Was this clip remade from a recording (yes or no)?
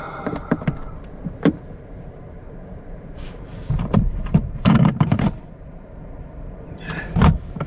yes